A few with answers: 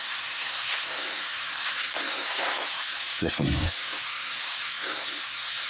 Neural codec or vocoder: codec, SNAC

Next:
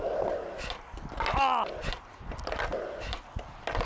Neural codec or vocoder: none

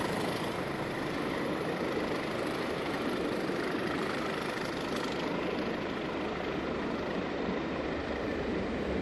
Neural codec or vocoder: vocoder, BigVGAN v2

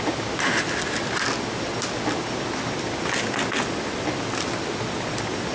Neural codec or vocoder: none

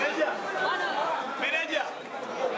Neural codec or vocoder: vocoder, BigVGAN v2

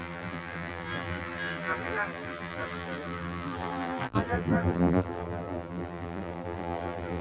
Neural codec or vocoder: vocoder, BigVGAN v2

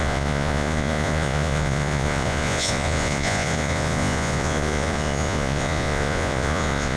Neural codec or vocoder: vocoder, Vocos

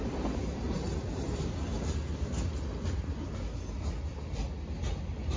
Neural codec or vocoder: none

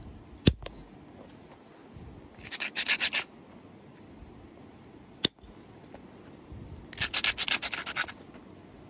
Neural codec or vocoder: none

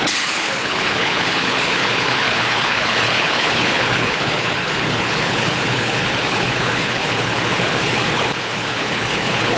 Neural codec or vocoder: codec, HILCodec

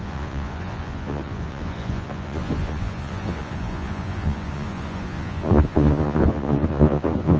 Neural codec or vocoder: vocoder, Vocos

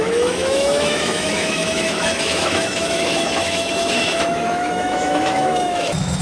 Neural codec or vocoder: autoencoder, DAC-VAE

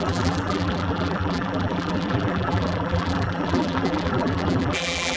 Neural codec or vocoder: vocoder, BigVGAN v2